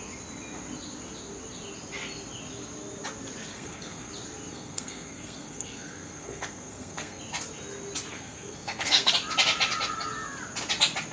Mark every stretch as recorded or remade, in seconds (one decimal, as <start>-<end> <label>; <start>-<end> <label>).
0.0-3.5 recorded; 3.5-4.1 remade; 4.1-4.5 recorded; 4.5-7.2 remade; 7.2-8.1 recorded; 8.1-9.1 remade; 9.1-11.1 recorded